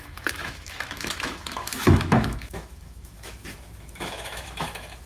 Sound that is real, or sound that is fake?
fake